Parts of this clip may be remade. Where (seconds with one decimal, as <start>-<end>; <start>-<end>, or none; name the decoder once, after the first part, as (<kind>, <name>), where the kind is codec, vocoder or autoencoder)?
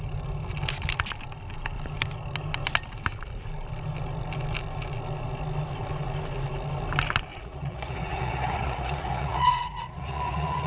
7.3-10.7 (vocoder, Vocos)